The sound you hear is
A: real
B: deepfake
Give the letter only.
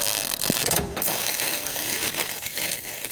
B